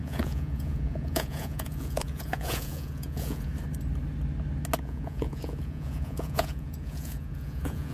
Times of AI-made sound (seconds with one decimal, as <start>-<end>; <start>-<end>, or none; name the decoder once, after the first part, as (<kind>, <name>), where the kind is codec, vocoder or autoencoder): 0.0-3.5 (vocoder, Vocos); 4.8-7.9